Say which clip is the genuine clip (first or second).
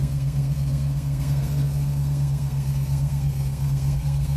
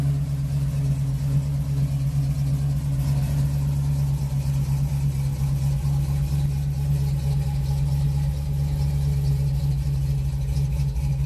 second